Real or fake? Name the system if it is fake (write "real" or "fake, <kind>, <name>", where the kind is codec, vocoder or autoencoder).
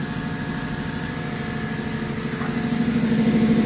real